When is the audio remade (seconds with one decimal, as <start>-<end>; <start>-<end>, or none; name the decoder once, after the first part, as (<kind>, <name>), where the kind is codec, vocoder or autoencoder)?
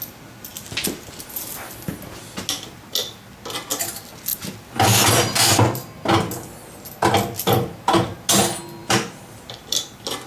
8.8-10.3 (vocoder, BigVGAN v2)